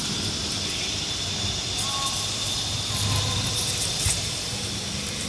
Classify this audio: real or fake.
real